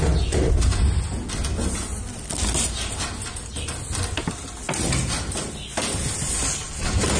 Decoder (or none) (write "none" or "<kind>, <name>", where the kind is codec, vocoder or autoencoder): none